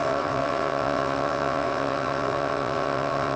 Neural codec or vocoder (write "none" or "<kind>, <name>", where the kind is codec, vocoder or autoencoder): vocoder, WaveNeXt